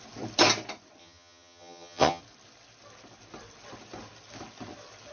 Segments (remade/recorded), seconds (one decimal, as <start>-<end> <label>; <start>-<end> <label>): 0.0-1.0 recorded; 1.0-2.2 remade; 2.2-5.1 recorded